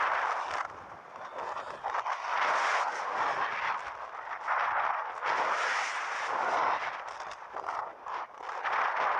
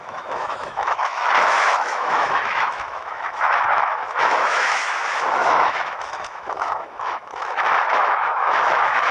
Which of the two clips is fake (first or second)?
second